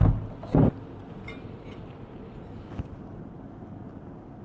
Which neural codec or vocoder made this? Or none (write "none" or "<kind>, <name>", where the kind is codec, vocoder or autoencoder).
none